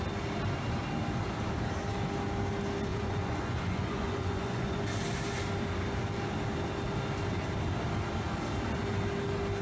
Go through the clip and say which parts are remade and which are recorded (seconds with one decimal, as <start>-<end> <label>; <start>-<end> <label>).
0.0-2.9 recorded; 2.9-4.8 remade; 4.8-9.6 recorded